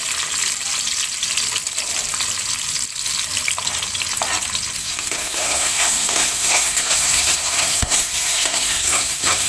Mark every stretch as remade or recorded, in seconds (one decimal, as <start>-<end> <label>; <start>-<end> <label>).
0.0-4.8 recorded; 4.8-9.5 remade